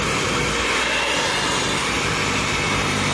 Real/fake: real